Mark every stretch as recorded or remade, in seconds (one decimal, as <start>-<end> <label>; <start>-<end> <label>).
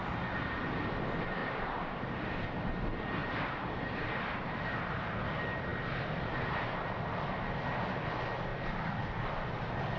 0.0-1.4 recorded; 1.4-2.0 remade; 2.0-3.2 recorded; 3.2-5.2 remade; 5.2-8.5 recorded; 8.5-9.3 remade; 9.3-10.0 recorded